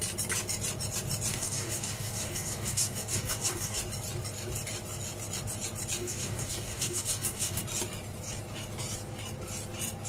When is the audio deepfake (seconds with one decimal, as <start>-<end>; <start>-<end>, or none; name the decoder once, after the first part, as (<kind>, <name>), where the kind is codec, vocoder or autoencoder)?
1.3-3.8 (codec, DAC); 6.0-7.6